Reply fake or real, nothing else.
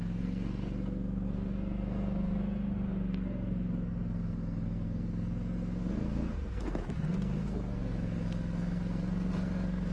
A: fake